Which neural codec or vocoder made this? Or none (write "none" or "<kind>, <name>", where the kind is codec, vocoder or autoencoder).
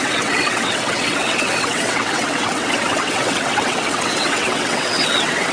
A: vocoder, WaveNeXt